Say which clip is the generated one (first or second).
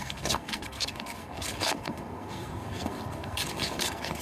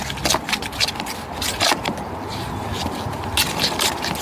first